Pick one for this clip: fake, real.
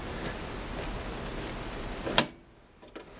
real